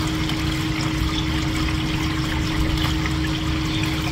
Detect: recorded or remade recorded